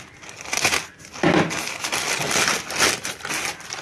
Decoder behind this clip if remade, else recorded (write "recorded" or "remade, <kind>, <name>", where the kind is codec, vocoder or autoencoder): recorded